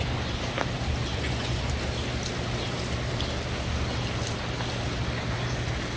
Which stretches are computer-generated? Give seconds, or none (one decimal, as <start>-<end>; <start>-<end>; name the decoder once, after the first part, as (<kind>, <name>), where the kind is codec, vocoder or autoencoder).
1.1-1.7 (vocoder, Vocos)